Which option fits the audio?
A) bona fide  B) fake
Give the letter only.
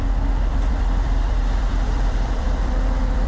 B